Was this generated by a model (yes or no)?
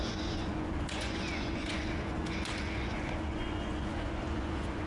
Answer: yes